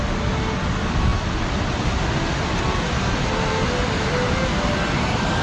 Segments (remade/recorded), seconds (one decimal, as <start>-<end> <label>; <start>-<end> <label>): 0.0-5.4 recorded